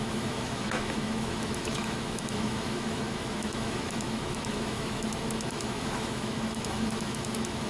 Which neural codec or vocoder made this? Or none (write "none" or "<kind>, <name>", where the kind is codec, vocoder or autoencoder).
autoencoder, DAC-VAE